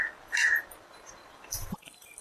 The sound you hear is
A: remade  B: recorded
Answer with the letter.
A